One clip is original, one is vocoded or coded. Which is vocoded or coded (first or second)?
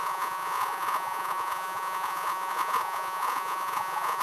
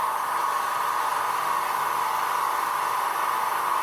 first